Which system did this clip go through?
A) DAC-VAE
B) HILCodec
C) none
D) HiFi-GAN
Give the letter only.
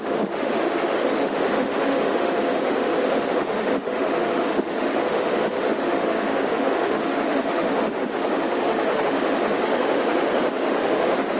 A